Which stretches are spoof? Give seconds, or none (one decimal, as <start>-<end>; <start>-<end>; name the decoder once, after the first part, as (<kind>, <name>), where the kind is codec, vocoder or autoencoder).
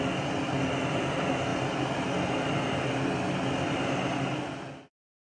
none